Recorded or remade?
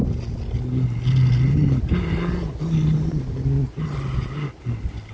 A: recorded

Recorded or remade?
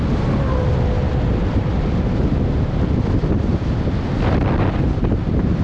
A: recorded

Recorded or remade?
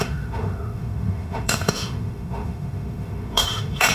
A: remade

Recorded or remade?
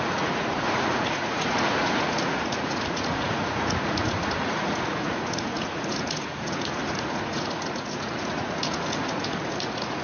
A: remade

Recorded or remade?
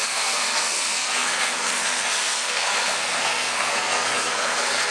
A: remade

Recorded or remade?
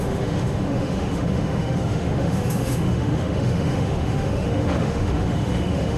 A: remade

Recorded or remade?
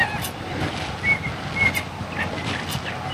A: recorded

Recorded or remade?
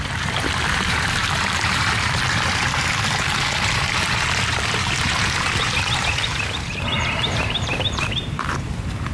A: remade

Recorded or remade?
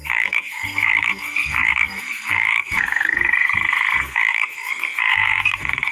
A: remade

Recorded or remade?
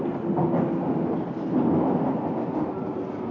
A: recorded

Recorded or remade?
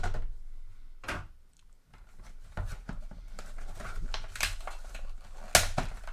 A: recorded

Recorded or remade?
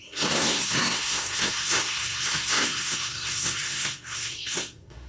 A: remade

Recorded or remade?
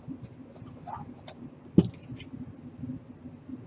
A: recorded